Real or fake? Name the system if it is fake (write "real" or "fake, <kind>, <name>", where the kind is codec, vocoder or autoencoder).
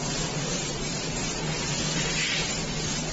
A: real